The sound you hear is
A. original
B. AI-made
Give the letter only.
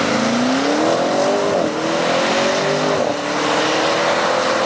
A